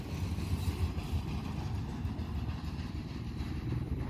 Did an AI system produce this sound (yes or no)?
no